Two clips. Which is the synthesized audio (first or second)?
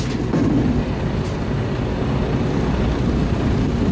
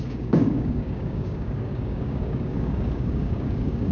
second